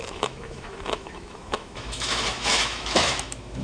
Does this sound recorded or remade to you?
remade